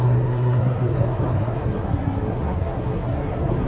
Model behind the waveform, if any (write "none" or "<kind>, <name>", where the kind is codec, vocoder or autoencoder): codec, SNAC